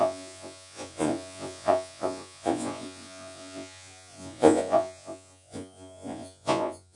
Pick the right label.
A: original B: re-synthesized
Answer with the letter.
B